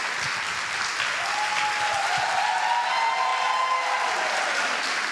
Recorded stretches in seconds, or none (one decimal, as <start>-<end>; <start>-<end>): 0.0-5.1